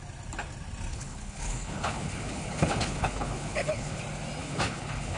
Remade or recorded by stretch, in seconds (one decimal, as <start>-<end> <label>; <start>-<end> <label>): 0.0-0.9 recorded; 0.9-4.0 remade; 4.0-4.4 recorded; 4.4-5.2 remade